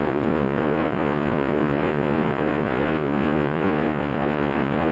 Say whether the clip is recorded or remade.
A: remade